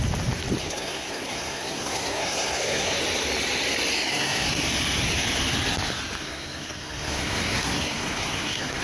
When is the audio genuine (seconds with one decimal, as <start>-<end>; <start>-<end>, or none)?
0.0-0.6; 3.0-4.1; 4.6-6.2